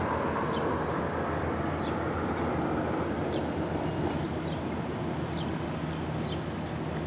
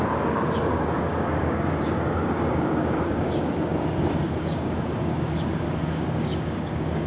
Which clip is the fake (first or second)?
second